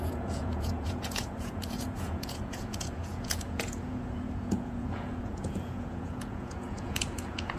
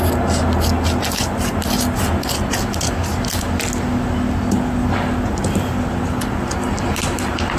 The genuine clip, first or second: second